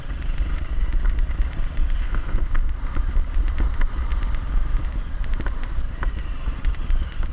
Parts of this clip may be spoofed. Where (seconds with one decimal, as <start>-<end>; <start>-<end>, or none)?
2.0-2.6